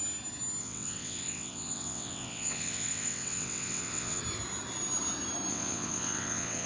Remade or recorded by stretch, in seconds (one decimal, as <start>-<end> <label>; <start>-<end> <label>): 0.0-0.6 recorded; 0.6-4.2 remade; 4.2-5.5 recorded; 5.5-6.7 remade